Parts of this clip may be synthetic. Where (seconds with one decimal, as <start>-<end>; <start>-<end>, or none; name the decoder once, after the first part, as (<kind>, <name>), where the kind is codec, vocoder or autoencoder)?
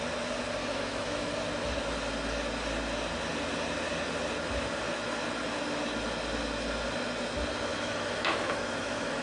0.6-1.3 (autoencoder, DAC-VAE); 7.7-9.2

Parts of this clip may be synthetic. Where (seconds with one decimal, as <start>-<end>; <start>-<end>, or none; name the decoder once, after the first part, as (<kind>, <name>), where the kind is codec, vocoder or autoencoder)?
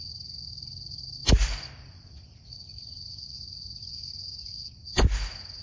none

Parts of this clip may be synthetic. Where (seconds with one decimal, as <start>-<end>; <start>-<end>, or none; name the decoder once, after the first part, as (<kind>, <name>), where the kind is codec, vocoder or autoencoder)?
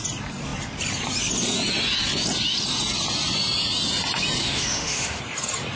4.4-5.2 (autoencoder, DAC-VAE)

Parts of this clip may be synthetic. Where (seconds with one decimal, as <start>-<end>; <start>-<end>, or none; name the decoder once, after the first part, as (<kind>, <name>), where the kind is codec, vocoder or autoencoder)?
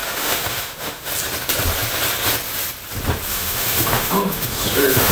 0.0-1.1 (autoencoder, DAC-VAE); 3.3-5.1